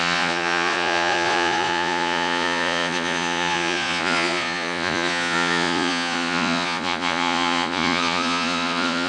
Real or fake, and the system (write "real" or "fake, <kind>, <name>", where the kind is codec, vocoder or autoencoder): fake, vocoder, Vocos